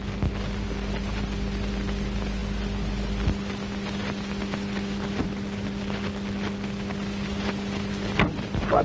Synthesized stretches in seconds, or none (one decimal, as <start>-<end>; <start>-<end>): none